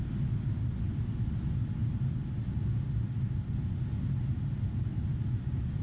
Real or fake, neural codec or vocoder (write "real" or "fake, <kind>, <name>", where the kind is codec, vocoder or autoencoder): real